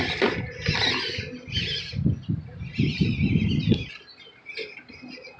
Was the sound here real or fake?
real